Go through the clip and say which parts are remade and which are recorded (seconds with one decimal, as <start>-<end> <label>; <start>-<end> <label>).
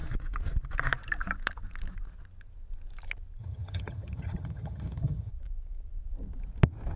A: 0.0-3.4 recorded; 3.4-5.3 remade; 5.3-7.0 recorded